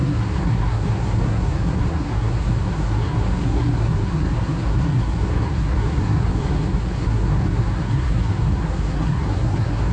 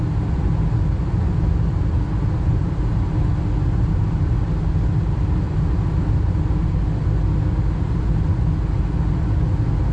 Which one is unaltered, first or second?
second